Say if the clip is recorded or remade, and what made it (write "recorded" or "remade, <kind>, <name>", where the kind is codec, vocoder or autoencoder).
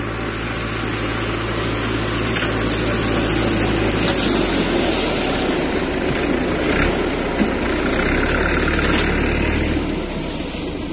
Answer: recorded